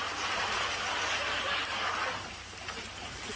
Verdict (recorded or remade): recorded